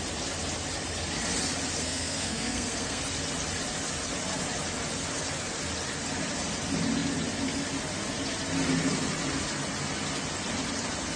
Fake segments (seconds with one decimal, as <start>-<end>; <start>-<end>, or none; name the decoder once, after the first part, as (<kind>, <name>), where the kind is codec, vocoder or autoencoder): 1.8-3.0 (codec, SNAC)